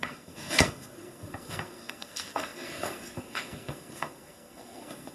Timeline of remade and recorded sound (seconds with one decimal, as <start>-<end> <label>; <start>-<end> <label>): 0.0-5.1 remade